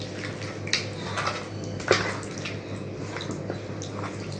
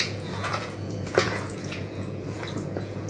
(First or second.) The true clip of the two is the first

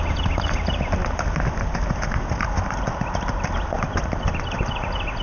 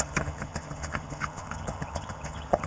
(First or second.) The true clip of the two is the first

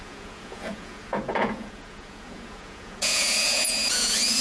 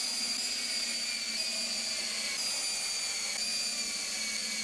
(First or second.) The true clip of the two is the second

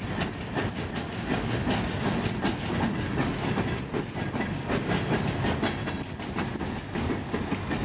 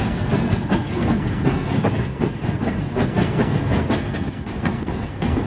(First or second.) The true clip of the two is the first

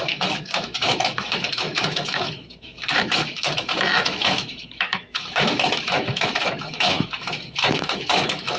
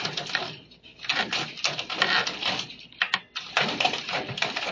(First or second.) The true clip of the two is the second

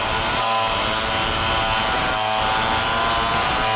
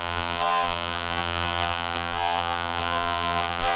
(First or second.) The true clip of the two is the first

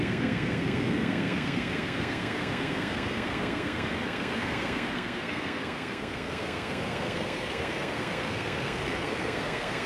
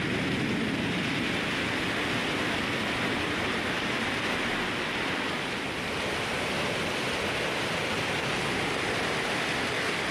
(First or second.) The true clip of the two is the second